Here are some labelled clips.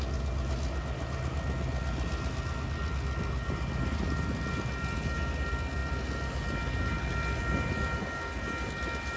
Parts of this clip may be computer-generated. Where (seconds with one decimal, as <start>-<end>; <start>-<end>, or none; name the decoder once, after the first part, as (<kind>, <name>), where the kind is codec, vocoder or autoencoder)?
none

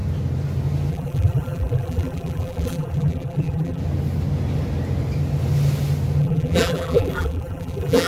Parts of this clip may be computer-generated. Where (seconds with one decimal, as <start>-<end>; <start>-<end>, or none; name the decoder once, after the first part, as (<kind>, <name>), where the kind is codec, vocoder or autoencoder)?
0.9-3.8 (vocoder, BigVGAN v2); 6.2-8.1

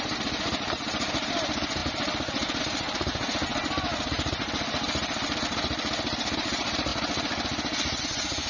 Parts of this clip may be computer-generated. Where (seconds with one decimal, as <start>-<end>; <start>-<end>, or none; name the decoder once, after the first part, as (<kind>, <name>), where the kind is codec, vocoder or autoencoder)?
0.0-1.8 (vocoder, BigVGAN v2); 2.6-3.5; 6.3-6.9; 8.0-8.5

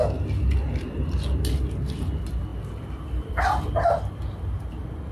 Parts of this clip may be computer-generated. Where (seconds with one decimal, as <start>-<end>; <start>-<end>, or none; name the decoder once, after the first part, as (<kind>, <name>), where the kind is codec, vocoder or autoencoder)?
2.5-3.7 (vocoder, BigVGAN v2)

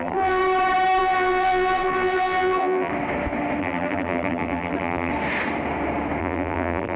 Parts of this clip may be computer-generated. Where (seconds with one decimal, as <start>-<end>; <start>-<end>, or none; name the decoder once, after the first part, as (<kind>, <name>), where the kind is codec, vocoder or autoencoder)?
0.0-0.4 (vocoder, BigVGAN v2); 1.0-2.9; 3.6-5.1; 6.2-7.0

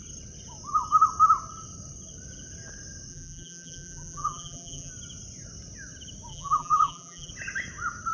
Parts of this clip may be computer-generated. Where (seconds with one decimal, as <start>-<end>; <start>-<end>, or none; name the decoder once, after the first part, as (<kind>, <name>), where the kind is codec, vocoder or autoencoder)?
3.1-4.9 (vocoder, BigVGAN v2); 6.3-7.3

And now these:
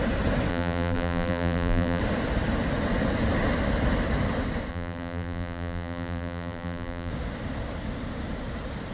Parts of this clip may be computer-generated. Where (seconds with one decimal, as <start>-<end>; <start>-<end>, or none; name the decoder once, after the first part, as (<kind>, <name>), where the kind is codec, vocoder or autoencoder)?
0.5-2.0 (vocoder, BigVGAN v2); 4.7-7.1

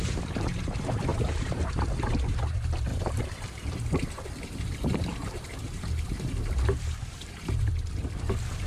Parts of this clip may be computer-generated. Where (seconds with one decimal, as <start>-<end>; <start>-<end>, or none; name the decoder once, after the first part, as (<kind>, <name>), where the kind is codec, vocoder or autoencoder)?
1.1-2.4 (vocoder, BigVGAN v2); 2.9-7.7